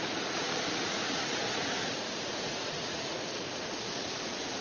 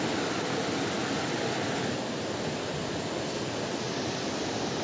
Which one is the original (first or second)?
second